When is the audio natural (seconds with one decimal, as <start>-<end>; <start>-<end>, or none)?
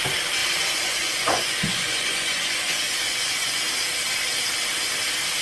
0.0-0.4; 3.6-5.4